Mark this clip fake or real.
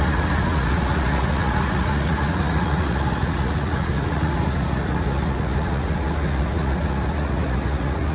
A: fake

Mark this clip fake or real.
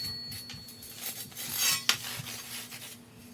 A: real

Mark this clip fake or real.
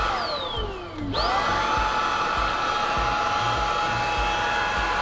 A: real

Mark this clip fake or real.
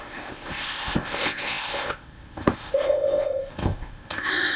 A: fake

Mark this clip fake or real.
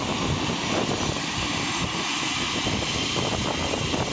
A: real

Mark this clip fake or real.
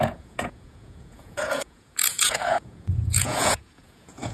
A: fake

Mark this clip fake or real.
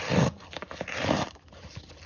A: fake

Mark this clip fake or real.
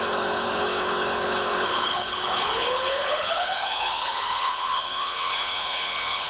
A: fake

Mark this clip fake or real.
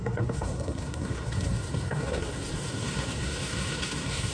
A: fake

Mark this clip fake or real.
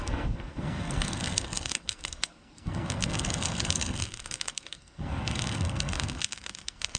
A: fake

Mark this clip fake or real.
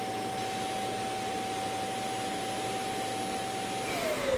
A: real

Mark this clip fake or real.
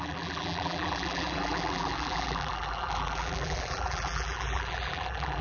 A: fake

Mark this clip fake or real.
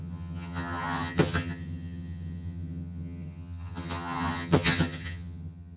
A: fake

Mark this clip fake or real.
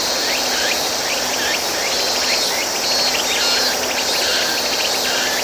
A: real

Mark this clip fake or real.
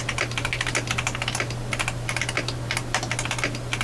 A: real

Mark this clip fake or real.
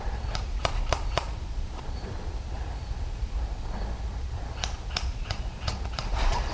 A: fake